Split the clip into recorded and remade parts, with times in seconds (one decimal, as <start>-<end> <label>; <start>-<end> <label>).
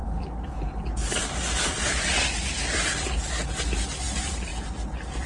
0.0-0.5 remade; 0.5-1.2 recorded; 1.2-3.1 remade; 3.1-5.3 recorded